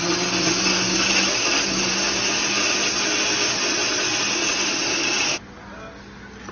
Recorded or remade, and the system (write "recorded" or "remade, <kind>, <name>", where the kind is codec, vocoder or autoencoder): recorded